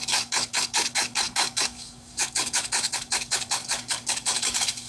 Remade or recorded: remade